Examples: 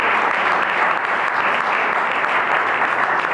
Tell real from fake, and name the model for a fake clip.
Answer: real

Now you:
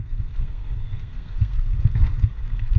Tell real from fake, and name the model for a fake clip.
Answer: fake, codec, SNAC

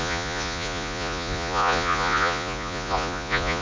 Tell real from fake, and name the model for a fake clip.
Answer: fake, vocoder, Vocos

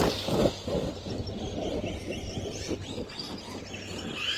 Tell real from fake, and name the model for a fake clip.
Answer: real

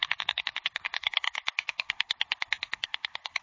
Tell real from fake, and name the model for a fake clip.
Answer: fake, codec, SNAC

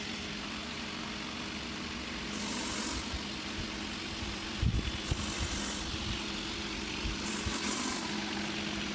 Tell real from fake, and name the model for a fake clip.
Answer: real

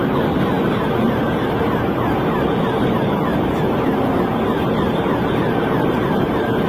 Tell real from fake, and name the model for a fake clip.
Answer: real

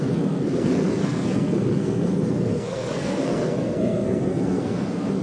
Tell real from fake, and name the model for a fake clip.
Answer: fake, codec, SNAC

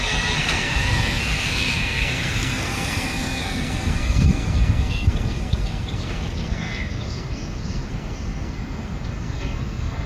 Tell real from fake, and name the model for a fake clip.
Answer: fake, codec, SNAC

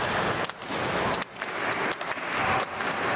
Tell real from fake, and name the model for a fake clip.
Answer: real